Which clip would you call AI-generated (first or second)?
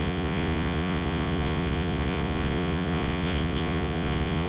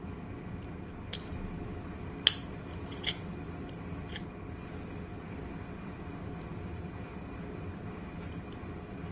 first